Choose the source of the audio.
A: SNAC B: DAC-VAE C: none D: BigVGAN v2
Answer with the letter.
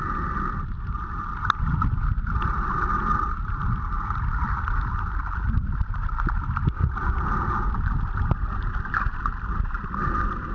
C